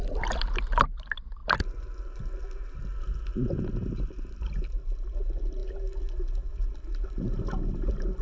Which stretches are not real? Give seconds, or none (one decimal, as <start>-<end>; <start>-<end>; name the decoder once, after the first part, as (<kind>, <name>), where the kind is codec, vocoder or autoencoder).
none